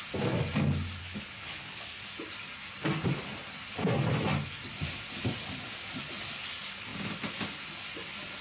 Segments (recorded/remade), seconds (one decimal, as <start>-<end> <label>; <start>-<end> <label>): 0.0-1.0 recorded; 1.0-2.0 remade; 2.0-8.4 recorded